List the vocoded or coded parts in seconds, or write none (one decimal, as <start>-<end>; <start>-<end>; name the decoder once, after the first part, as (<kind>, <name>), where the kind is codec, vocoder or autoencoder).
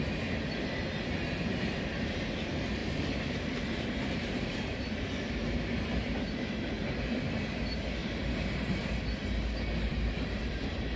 2.8-5.3 (vocoder, BigVGAN v2); 8.0-8.9; 9.9-10.5